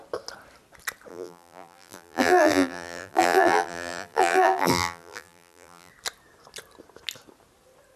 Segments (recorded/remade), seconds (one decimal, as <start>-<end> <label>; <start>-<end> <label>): 0.0-1.1 recorded; 1.1-5.9 remade; 5.9-8.0 recorded